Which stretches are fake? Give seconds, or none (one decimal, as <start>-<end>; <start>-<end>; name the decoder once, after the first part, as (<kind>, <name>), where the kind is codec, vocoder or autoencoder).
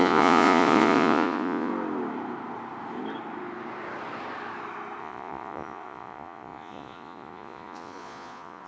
0.0-1.7 (vocoder, Vocos); 5.0-8.7